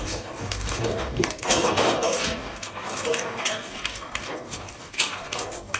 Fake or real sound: fake